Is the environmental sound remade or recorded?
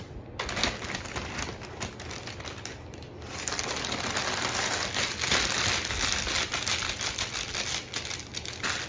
recorded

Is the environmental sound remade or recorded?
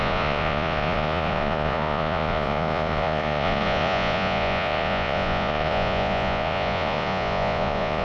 remade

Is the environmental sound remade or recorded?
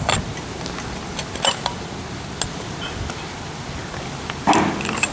recorded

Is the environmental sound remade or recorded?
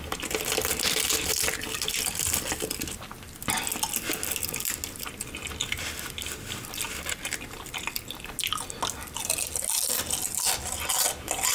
recorded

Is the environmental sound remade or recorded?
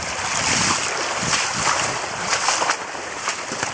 recorded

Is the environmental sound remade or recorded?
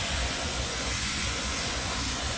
remade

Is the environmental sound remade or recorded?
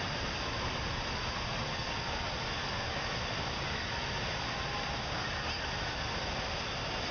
recorded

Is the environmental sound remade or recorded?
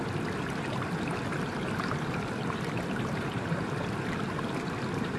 recorded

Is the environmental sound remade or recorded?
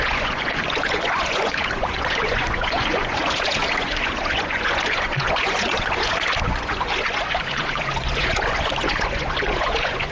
remade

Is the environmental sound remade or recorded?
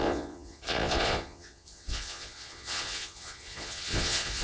remade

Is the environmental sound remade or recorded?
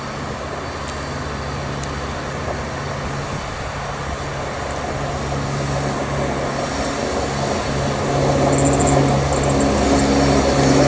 recorded